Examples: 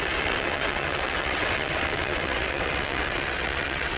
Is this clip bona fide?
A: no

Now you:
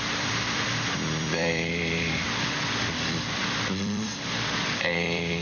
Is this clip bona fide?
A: no